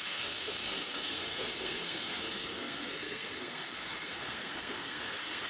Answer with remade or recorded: remade